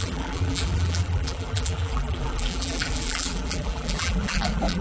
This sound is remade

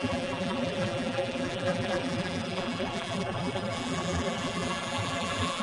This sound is remade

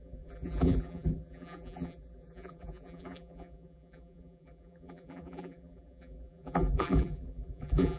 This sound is remade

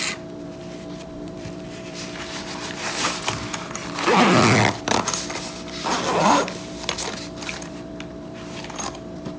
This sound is remade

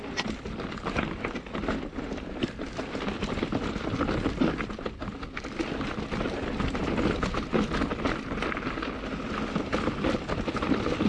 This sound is recorded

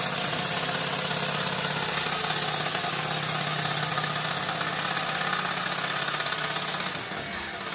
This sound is recorded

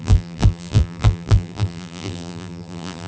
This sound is remade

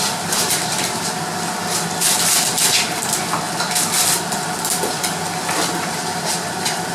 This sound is remade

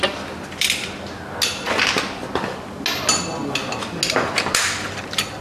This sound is recorded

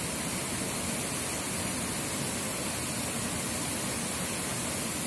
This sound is recorded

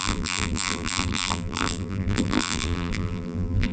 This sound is remade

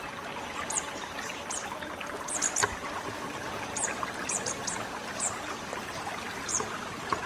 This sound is recorded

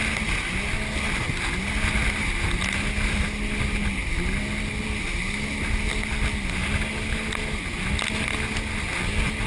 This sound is recorded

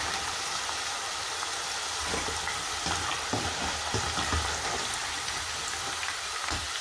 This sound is remade